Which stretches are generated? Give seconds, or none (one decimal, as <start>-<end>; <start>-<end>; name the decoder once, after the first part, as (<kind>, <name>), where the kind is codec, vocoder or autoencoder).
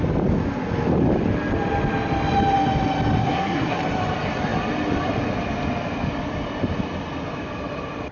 3.2-3.8 (codec, SNAC)